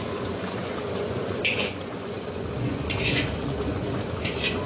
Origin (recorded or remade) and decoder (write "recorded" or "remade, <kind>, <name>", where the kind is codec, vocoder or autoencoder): remade, vocoder, Vocos